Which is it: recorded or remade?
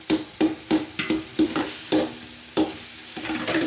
remade